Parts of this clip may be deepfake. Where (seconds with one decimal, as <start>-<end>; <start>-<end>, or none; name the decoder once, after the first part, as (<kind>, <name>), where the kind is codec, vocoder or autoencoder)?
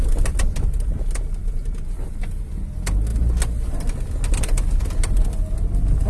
none